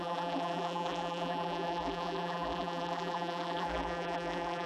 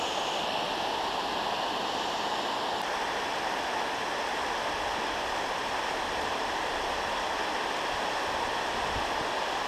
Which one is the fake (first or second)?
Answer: first